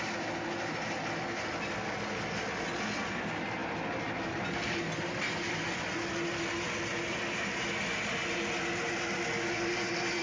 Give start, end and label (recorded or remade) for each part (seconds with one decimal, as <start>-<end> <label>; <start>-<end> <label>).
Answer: 0.0-10.2 recorded